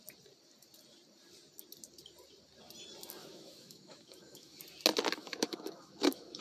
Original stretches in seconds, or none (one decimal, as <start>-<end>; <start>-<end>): 0.0-3.2; 4.6-5.2